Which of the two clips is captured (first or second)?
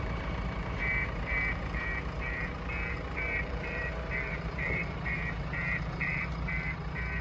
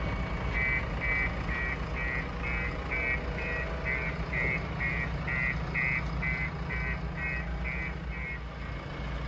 second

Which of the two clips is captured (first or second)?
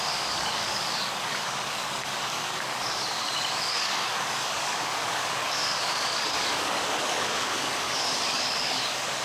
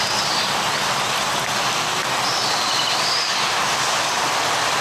second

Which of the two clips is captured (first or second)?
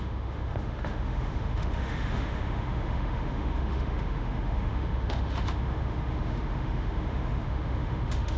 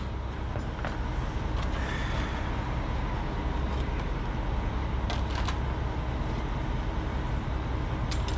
second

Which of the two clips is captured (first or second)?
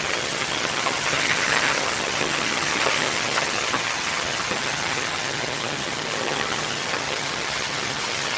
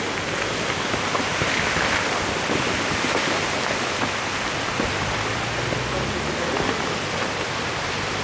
second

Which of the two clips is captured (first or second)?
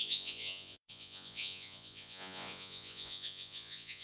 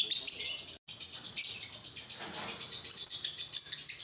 second